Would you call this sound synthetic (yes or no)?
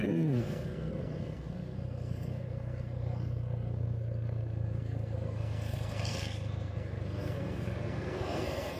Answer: yes